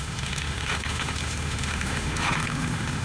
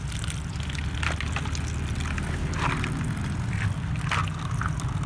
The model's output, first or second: first